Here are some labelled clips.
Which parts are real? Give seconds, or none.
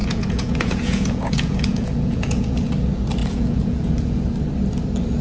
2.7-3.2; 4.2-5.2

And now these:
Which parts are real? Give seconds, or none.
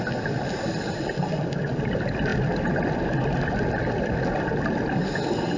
0.0-5.6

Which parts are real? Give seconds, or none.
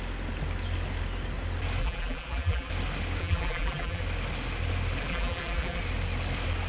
0.0-1.8; 2.7-3.2; 4.0-5.1; 5.8-6.7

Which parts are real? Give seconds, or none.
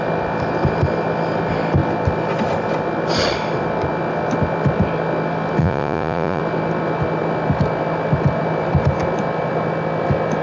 0.0-5.6; 6.4-10.4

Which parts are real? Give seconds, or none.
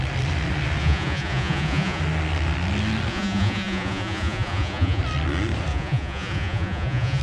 0.0-0.8; 2.0-3.1; 5.0-5.7